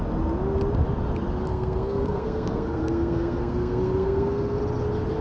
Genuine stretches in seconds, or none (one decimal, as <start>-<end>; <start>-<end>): 0.0-1.5; 4.6-5.2